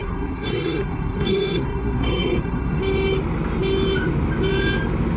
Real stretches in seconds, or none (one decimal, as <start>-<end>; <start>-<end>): 2.8-5.2